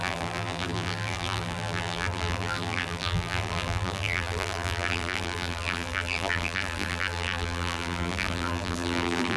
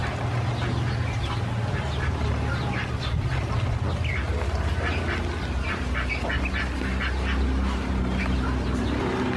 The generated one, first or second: first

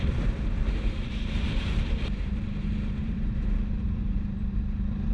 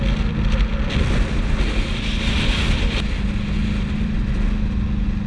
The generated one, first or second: first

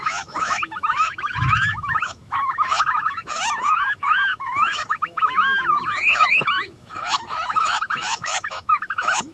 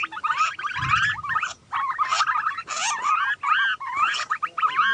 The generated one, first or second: first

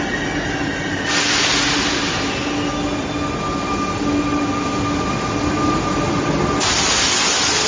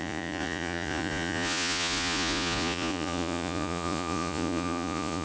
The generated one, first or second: second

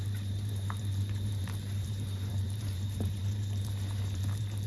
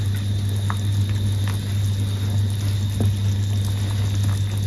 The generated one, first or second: first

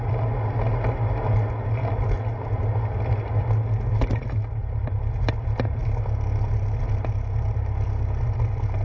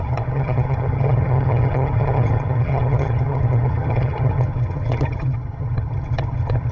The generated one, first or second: second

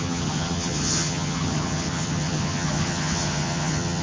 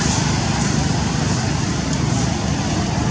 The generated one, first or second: first